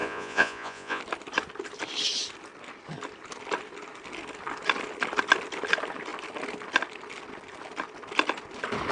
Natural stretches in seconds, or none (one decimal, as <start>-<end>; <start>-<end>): 1.0-8.9